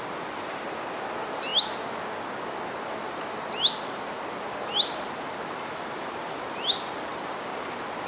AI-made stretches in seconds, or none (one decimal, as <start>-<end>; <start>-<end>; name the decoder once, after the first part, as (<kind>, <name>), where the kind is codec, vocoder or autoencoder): none